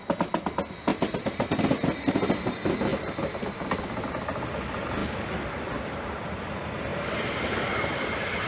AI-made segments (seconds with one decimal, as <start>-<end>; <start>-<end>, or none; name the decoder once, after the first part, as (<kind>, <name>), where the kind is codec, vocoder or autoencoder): 0.9-1.5 (vocoder, BigVGAN v2); 2.9-3.8